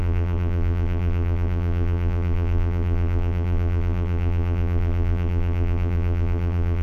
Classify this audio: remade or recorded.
remade